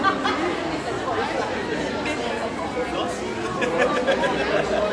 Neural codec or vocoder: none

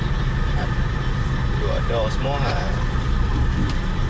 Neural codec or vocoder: none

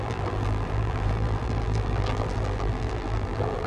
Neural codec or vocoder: vocoder, BigVGAN v2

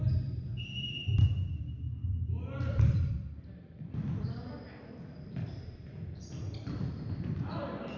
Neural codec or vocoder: vocoder, BigVGAN v2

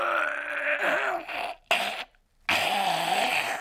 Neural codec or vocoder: none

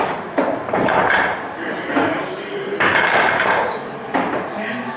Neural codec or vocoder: vocoder, BigVGAN v2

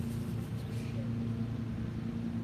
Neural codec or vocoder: none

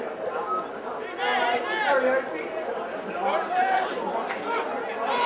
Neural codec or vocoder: none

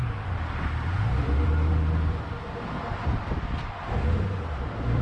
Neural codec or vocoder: vocoder, BigVGAN v2